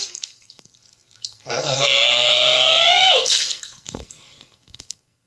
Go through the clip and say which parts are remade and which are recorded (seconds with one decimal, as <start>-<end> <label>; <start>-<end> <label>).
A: 0.0-5.3 remade